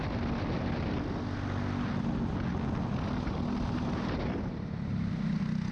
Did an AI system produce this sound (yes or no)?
no